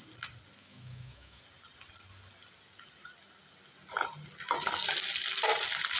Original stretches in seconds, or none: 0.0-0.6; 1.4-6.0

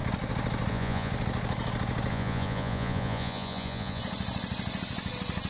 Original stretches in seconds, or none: 0.0-0.7; 1.1-2.1; 4.0-5.5

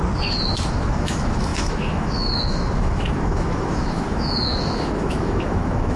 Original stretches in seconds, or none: 0.0-0.7

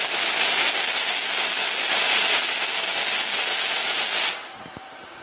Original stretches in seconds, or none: 0.7-1.9; 2.4-4.7

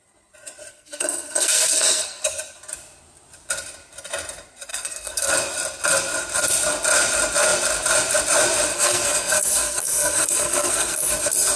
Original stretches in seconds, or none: 0.0-0.7; 2.2-4.7; 5.3-8.7; 11.1-11.6